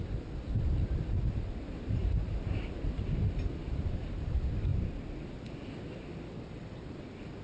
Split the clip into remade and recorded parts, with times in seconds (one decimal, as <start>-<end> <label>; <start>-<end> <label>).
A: 0.0-2.0 recorded; 2.0-3.6 remade; 3.6-7.4 recorded